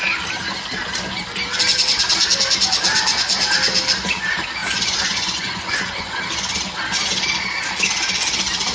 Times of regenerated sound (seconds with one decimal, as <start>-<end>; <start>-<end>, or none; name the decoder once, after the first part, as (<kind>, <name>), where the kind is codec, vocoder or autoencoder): 4.6-6.2 (vocoder, Vocos)